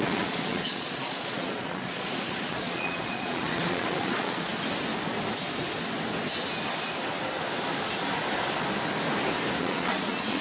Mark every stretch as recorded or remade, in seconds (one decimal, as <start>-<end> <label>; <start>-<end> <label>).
0.0-4.5 remade; 4.5-9.6 recorded; 9.6-10.4 remade

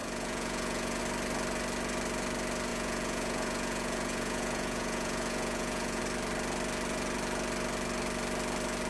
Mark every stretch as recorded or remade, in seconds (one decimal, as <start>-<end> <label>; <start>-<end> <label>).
0.0-1.0 remade; 1.0-2.7 recorded; 2.7-6.0 remade; 6.0-8.9 recorded

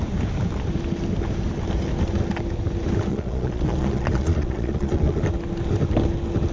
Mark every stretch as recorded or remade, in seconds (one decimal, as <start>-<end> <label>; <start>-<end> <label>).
0.0-3.1 recorded; 3.1-5.2 remade; 5.2-6.5 recorded